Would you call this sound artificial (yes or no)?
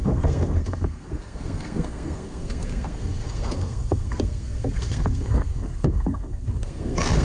yes